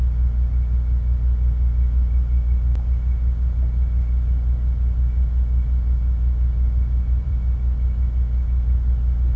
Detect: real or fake fake